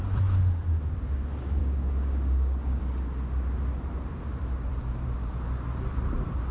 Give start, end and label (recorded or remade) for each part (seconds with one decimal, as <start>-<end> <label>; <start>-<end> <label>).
0.0-1.6 recorded; 1.6-2.8 remade; 2.8-6.5 recorded